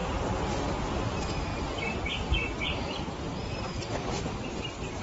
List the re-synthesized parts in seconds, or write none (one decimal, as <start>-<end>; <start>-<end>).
none